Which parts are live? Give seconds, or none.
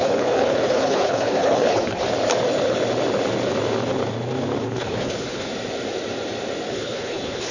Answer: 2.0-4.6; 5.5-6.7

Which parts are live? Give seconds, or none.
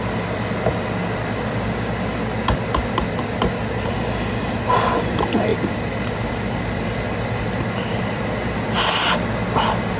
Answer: 0.0-10.0